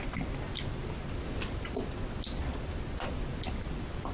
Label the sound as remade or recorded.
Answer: recorded